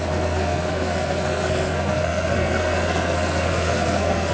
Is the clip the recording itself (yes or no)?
no